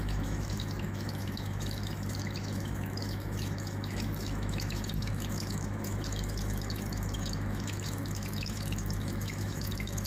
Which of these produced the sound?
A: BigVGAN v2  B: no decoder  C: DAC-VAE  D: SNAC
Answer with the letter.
C